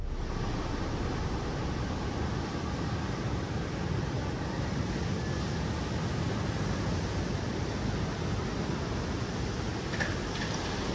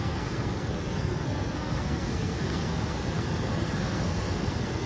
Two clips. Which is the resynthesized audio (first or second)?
second